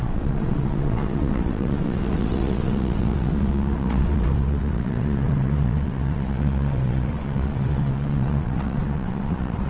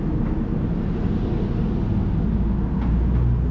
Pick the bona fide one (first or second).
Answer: second